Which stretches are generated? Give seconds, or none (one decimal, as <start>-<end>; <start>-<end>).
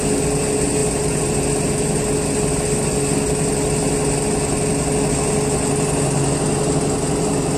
none